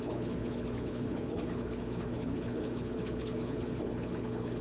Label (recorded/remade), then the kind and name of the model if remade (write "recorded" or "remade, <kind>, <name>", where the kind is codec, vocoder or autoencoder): remade, codec, HILCodec